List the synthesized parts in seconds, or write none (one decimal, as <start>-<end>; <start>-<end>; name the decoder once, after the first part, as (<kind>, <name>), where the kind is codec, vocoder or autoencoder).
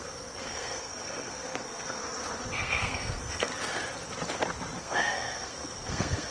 0.0-2.0 (codec, SNAC); 2.5-3.5; 4.8-6.3